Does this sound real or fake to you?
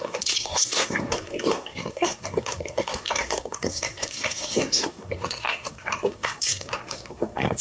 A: fake